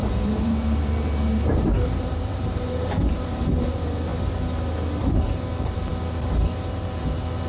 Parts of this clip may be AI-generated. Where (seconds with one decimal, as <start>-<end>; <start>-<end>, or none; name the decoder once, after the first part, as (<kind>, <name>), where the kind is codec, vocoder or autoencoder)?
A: 0.0-3.5 (vocoder, BigVGAN v2)